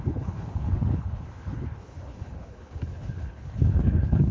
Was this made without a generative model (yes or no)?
no